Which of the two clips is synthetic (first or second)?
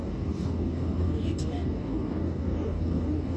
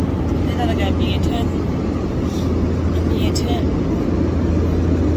first